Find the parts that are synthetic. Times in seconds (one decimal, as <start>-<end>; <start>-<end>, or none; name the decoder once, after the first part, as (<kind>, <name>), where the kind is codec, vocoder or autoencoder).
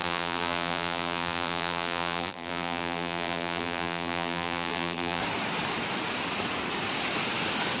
0.0-5.2 (vocoder, BigVGAN v2)